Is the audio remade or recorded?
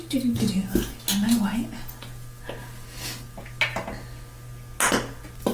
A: recorded